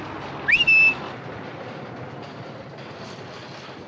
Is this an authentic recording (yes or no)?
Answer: yes